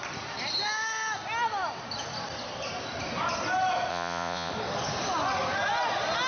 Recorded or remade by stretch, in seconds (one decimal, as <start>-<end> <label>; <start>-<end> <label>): 0.0-3.9 recorded; 3.9-4.5 remade; 4.5-6.3 recorded